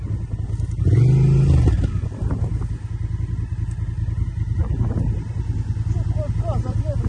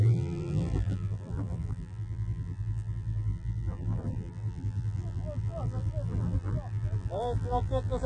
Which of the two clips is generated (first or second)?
second